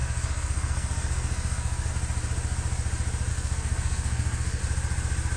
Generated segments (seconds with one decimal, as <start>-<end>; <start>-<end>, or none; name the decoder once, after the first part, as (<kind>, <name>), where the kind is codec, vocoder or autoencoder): 0.0-1.9 (codec, SNAC); 3.3-4.6